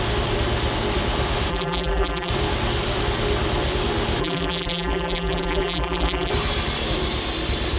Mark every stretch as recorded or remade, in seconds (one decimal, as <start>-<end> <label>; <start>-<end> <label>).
0.0-1.5 recorded; 1.5-2.3 remade; 2.3-4.2 recorded; 4.2-6.3 remade; 6.3-7.8 recorded